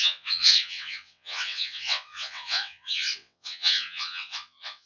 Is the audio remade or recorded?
remade